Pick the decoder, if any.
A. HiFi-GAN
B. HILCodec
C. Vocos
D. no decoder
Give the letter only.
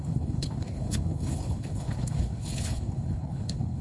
B